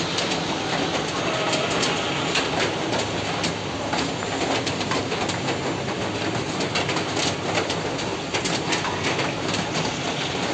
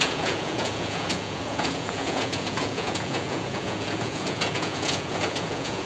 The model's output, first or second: second